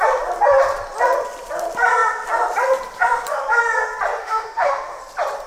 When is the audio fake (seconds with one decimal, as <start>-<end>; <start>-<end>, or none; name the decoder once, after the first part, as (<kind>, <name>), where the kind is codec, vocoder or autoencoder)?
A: 4.2-5.0 (autoencoder, DAC-VAE)